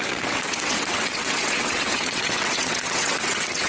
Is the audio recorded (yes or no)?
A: no